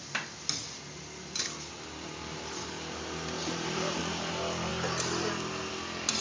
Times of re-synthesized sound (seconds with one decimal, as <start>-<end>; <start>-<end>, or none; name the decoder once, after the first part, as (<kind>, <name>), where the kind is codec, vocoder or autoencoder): 3.4-4.0 (vocoder, BigVGAN v2)